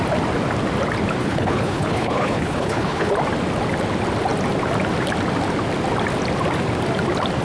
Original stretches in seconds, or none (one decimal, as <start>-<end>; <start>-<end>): 0.0-1.2; 3.1-7.4

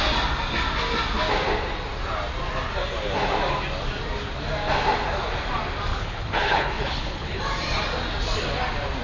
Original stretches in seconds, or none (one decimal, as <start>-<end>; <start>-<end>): 0.0-5.9; 7.4-9.0

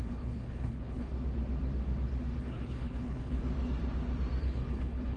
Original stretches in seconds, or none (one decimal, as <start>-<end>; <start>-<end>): 1.1-2.4; 3.4-4.4

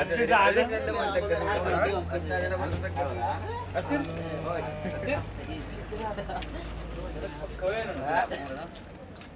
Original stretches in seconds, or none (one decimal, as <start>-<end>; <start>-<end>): 0.0-9.4

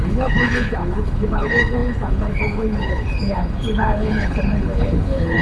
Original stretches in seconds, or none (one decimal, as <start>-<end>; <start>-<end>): none

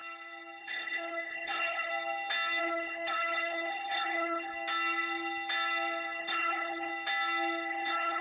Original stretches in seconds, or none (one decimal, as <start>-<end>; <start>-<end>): 0.0-0.6; 1.9-2.6; 4.5-6.2; 6.9-7.7